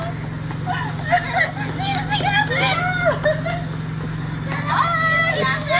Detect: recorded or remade recorded